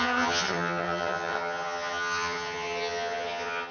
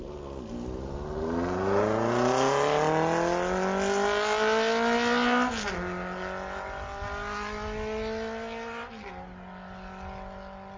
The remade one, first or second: first